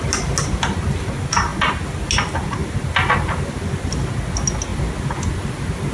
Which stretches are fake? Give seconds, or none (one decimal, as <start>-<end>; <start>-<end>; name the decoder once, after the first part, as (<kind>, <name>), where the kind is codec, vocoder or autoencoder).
none